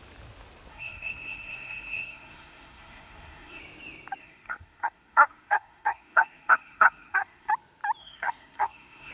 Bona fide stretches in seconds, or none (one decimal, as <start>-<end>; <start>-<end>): 0.0-0.7; 3.6-4.2; 7.5-8.0